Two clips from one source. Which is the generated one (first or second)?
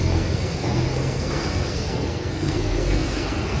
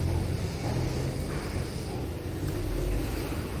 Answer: first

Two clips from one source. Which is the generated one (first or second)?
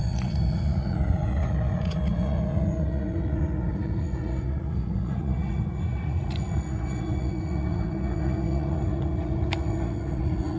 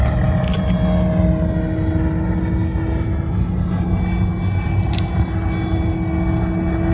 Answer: first